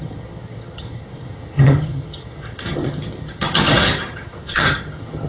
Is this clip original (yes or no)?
no